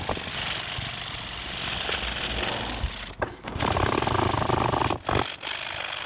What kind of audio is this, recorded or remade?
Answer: recorded